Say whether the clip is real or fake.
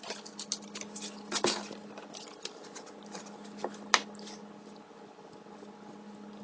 real